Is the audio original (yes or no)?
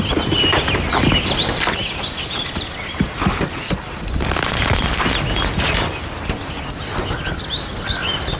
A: yes